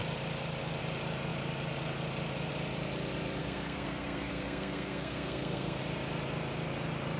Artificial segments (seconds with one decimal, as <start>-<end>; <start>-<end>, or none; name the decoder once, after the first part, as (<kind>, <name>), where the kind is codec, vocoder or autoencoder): 3.4-5.8 (codec, SNAC)